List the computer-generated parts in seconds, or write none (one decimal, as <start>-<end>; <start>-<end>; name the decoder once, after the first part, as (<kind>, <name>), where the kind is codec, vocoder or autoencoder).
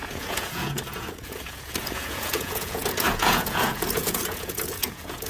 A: 0.0-5.3 (vocoder, Vocos)